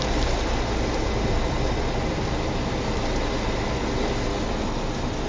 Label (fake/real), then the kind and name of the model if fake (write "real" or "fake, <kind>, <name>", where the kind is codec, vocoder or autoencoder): real